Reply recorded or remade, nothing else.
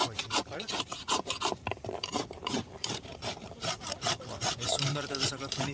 remade